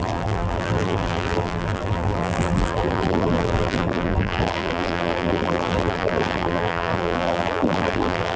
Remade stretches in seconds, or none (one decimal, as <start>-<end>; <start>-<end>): 0.0-8.4

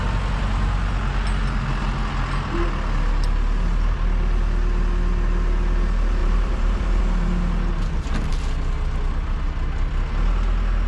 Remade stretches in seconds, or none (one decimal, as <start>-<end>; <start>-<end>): 6.2-7.0

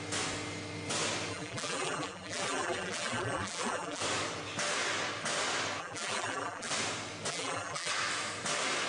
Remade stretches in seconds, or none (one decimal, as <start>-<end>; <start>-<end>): 1.3-4.0; 5.8-6.7; 7.3-7.9

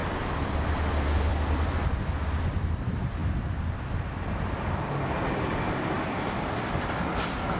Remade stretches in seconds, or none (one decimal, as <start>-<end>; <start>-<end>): 0.9-1.3; 2.0-3.2; 5.4-7.6

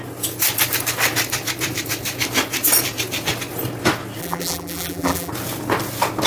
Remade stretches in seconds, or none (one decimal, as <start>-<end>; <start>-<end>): 4.2-5.3

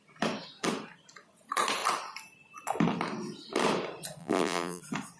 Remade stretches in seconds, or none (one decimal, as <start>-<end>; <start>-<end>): 4.2-4.8

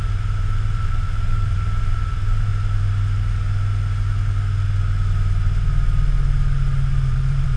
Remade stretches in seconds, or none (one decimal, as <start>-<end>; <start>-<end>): 0.0-2.5; 6.9-7.6

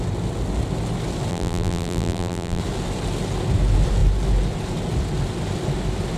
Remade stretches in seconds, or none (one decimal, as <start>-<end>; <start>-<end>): 1.3-2.6